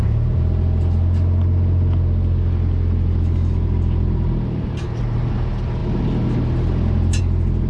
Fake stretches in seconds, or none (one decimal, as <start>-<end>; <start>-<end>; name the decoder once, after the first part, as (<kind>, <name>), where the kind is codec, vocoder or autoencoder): none